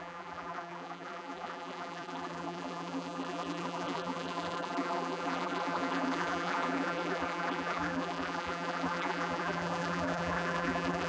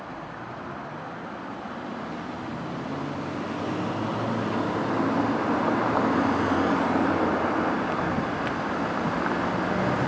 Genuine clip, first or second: second